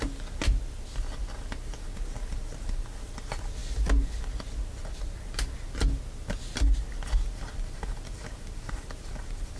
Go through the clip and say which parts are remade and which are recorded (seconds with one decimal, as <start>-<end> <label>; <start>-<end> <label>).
0.0-9.6 recorded